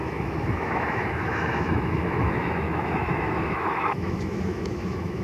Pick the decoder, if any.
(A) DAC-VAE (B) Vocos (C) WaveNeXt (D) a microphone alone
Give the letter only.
A